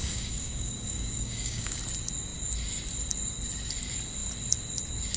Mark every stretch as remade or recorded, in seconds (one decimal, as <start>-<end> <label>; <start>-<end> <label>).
0.0-1.8 remade; 1.8-5.2 recorded